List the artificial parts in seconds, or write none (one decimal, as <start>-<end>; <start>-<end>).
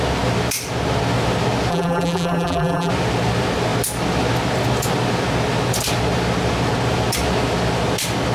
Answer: 1.7-2.9